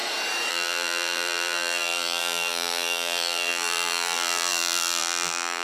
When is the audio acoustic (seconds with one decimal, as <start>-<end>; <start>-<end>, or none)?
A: 0.0-0.5